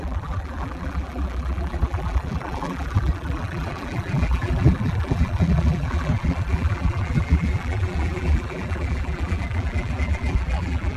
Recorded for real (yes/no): no